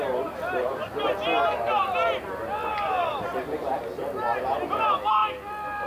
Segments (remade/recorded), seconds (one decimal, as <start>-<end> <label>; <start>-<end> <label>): 0.0-0.6 recorded; 0.6-1.1 remade; 1.1-5.9 recorded